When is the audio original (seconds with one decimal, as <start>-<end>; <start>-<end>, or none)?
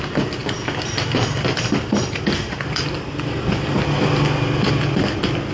0.0-5.5